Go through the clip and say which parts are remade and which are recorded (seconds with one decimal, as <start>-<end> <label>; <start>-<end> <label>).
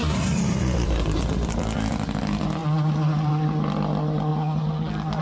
0.0-5.2 recorded